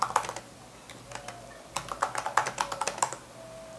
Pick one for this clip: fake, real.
real